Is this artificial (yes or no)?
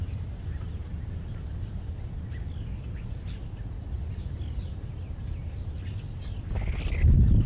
no